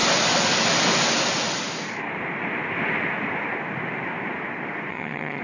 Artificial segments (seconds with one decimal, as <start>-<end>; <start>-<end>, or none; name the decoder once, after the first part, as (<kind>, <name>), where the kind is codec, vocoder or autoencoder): 4.9-5.4 (vocoder, HiFi-GAN)